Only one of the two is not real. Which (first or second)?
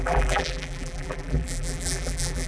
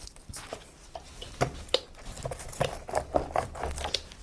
first